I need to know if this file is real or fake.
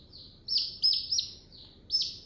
real